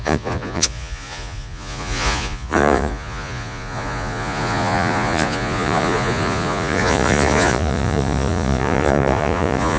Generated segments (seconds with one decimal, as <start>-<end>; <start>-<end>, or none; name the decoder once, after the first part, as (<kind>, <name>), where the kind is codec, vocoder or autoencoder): 0.0-9.8 (vocoder, Vocos)